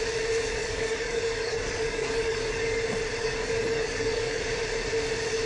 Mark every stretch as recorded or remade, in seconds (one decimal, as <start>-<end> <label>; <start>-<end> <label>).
0.0-0.6 recorded; 0.6-2.8 remade; 2.8-3.2 recorded; 3.2-4.4 remade; 4.4-5.5 recorded